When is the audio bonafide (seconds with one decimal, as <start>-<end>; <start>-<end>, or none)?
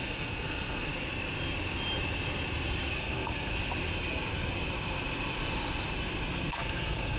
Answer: 0.9-3.0; 3.5-6.5